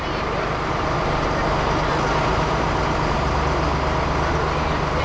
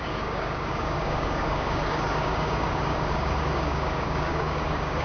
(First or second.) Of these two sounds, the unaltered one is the first